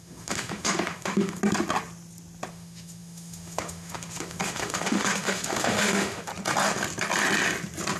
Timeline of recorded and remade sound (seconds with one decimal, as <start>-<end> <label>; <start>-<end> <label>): 0.0-1.4 remade; 1.4-2.5 recorded; 2.5-6.3 remade; 6.3-8.0 recorded